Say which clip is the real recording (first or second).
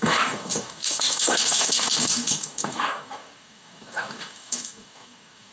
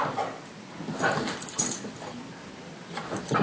second